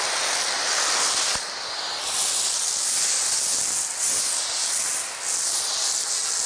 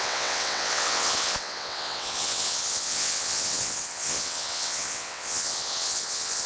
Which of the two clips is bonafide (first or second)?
first